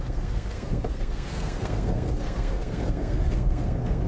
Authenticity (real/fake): fake